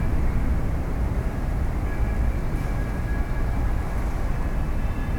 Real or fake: real